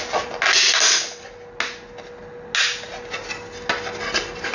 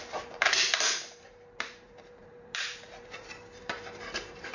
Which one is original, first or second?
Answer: first